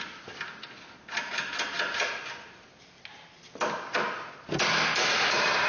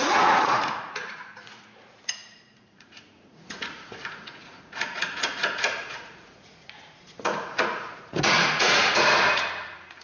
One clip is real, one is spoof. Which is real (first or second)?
first